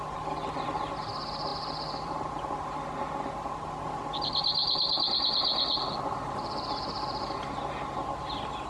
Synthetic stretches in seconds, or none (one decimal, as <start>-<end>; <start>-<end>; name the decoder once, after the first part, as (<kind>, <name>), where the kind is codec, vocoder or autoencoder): none